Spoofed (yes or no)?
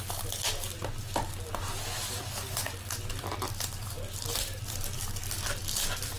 no